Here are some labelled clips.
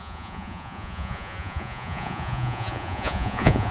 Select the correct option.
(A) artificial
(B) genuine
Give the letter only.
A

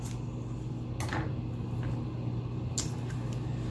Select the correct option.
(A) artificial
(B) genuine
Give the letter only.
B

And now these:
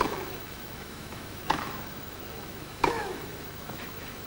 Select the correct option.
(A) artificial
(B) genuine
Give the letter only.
A